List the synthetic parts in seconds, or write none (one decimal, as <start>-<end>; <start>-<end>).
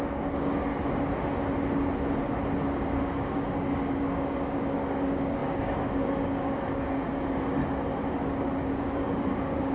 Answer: 0.0-0.7; 3.0-7.6; 8.6-9.7